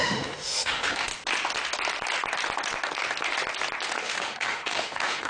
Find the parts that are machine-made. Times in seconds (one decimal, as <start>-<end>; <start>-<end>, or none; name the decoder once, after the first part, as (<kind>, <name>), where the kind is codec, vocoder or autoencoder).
0.0-1.1 (autoencoder, DAC-VAE); 4.0-5.3